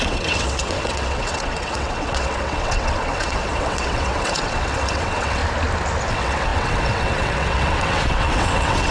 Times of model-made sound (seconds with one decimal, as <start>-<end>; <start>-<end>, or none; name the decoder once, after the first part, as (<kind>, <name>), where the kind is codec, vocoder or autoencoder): 0.0-5.4 (vocoder, WaveNeXt); 6.1-8.9